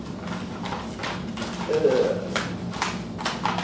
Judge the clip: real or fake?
real